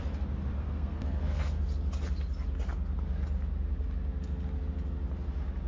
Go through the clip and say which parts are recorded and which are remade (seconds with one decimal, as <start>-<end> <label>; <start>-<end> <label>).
0.0-0.6 recorded; 0.6-1.6 remade; 1.6-5.7 recorded